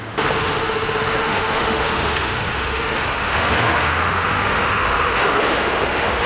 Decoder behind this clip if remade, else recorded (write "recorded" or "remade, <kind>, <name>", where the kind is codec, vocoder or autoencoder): remade, autoencoder, DAC-VAE